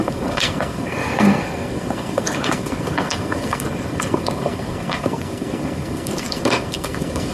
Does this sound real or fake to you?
fake